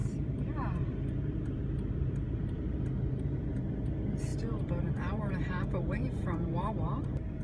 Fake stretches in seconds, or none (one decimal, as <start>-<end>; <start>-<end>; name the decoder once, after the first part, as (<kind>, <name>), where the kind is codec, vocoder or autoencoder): 0.0-7.4 (vocoder, BigVGAN v2)